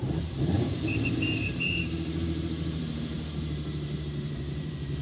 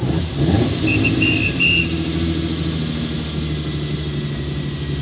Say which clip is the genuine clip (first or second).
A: second